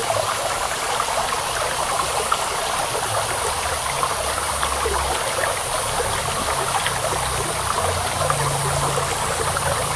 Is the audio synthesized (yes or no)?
no